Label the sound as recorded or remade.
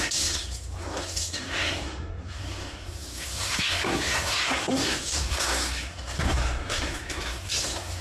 remade